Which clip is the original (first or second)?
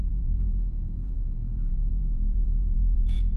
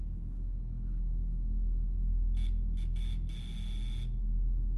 second